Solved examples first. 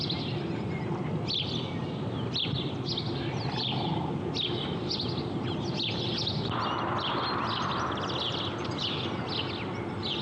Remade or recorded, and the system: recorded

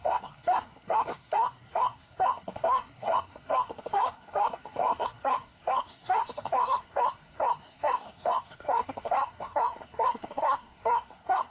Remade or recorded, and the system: remade, codec, SNAC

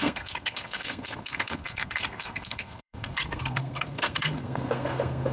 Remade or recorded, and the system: remade, codec, SNAC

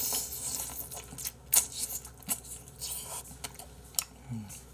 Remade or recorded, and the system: recorded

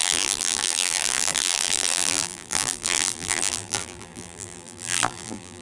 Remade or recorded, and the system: remade, vocoder, BigVGAN v2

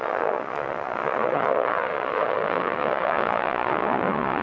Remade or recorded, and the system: remade, vocoder, Vocos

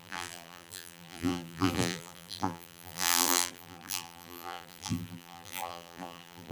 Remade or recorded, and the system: remade, vocoder, BigVGAN v2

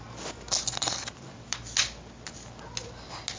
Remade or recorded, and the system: recorded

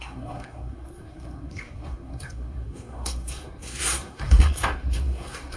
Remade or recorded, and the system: remade, codec, SNAC